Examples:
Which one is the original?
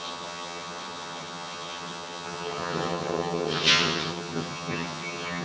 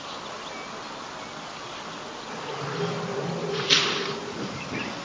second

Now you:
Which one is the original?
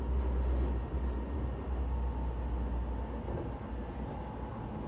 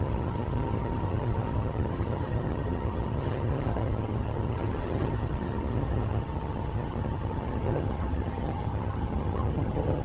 first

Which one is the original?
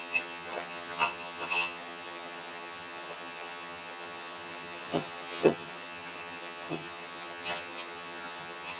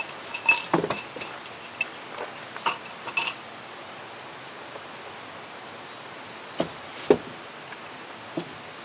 second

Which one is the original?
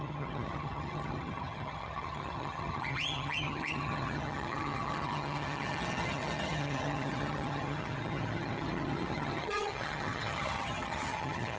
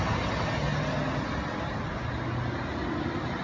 second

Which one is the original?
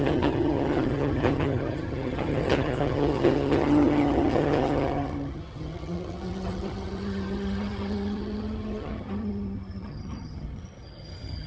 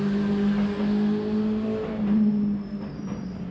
second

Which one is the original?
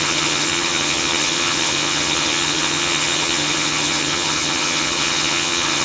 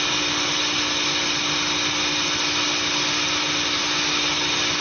second